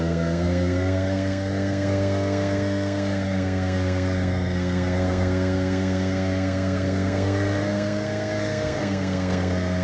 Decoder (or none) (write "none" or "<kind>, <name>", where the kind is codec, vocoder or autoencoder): codec, SNAC